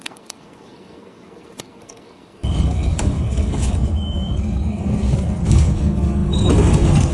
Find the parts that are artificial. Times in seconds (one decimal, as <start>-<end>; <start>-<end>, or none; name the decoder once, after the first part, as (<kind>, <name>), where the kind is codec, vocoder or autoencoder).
0.0-7.1 (codec, SNAC)